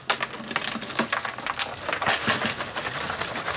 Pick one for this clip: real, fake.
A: real